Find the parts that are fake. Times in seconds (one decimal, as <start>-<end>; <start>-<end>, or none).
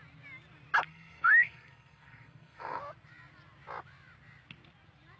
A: 0.9-2.8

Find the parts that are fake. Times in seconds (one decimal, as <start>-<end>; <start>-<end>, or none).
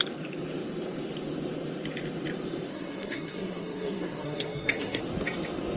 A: 2.7-5.0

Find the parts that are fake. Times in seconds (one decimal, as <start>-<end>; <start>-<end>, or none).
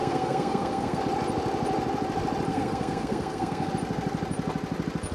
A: 0.0-1.0; 2.5-3.7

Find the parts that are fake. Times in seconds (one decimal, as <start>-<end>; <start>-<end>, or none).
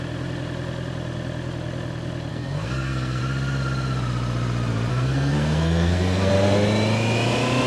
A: 2.3-3.2; 4.9-6.3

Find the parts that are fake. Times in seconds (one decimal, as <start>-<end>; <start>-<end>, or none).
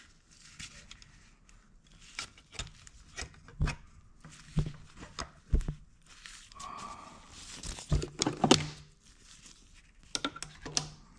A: none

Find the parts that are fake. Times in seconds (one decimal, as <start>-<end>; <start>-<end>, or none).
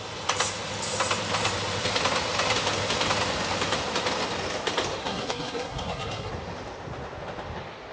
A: 5.0-6.3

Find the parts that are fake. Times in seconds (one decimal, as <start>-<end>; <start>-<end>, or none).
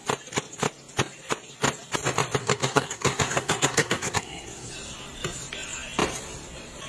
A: 2.4-4.7